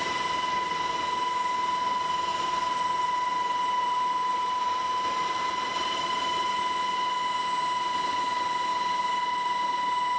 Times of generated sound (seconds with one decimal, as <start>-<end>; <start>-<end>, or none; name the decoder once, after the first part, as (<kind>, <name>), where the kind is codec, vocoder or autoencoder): 2.3-6.6 (vocoder, BigVGAN v2)